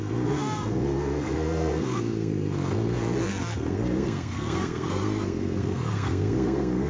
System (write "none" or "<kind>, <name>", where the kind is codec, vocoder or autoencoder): codec, SNAC